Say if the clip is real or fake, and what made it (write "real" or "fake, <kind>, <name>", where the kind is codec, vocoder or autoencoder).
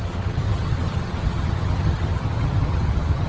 fake, vocoder, HiFi-GAN